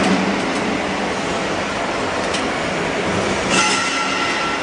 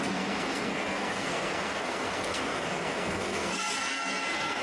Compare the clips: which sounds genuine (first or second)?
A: first